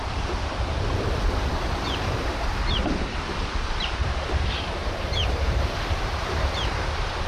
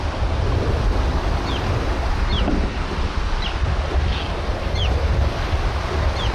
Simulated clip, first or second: first